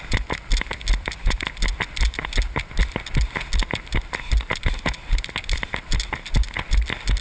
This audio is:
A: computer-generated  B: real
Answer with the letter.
B